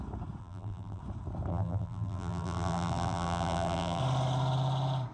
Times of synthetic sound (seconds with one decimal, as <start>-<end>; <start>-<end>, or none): 0.4-1.0; 1.5-4.0